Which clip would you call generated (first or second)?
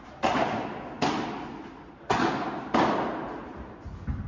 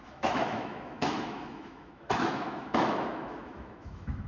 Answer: second